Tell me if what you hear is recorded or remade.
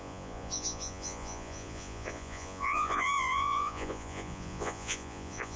remade